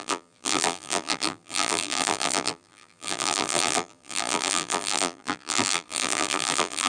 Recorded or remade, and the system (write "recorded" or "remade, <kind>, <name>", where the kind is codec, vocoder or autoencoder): remade, vocoder, BigVGAN v2